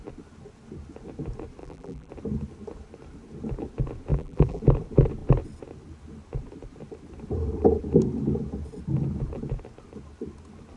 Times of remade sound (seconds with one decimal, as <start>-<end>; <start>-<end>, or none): 1.6-2.1; 4.1-4.6